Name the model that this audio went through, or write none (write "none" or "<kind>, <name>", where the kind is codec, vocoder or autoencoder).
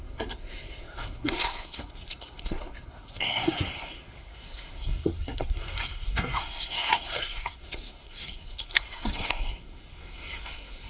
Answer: codec, SNAC